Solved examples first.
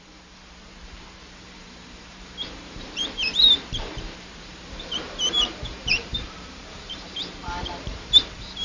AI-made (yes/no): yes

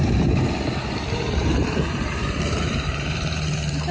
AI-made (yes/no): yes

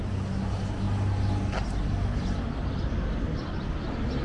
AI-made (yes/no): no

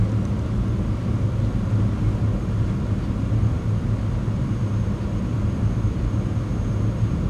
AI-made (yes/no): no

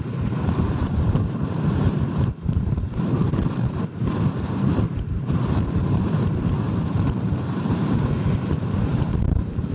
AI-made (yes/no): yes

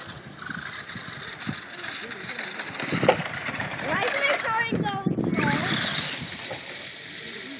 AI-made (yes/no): no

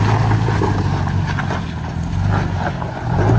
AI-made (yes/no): no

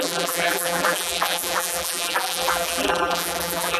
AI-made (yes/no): yes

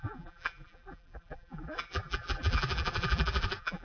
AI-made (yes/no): yes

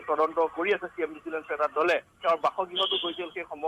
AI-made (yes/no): yes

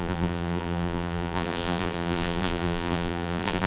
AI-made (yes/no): yes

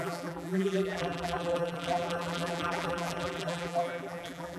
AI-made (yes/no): yes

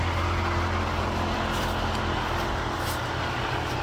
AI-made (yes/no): no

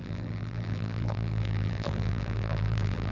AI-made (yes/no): yes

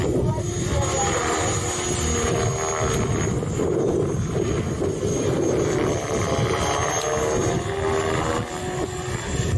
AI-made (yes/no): no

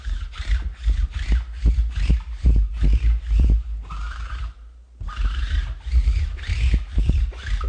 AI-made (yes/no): no